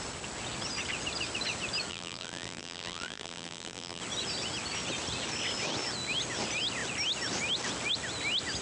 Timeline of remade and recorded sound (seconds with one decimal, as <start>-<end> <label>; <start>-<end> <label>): 0.0-1.9 recorded; 1.9-4.0 remade; 4.0-8.6 recorded